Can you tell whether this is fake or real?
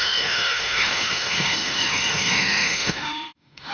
fake